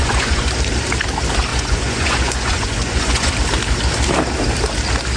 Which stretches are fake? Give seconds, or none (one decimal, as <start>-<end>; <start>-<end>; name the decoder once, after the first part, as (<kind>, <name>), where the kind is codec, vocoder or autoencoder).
0.0-0.5 (vocoder, Vocos); 1.5-3.3